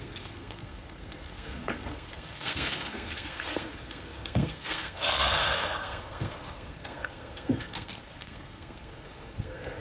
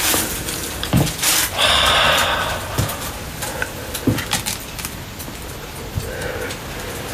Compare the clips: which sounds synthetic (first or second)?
first